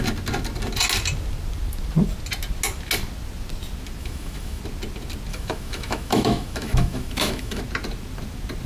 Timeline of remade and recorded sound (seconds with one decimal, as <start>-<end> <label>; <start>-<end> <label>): 0.0-4.0 recorded; 4.0-4.6 remade; 4.6-5.3 recorded; 5.3-7.6 remade; 7.6-8.7 recorded